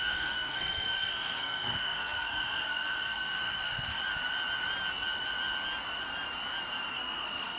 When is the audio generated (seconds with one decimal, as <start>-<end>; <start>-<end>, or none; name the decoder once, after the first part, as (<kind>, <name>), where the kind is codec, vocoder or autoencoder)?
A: 0.0-4.0 (codec, SNAC); 6.9-7.6